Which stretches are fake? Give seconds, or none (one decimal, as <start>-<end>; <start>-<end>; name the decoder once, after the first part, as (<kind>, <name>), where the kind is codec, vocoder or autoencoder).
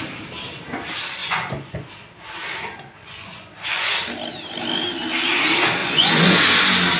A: 1.2-1.9 (vocoder, Vocos); 3.0-3.9; 5.8-6.4